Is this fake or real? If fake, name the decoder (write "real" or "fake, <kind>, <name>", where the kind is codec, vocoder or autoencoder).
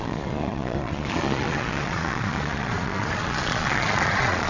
fake, vocoder, Vocos